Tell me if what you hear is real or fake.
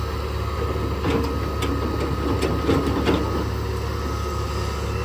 real